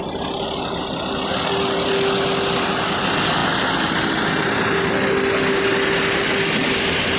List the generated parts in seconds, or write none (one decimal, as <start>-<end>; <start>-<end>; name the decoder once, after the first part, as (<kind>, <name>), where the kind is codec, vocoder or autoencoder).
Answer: none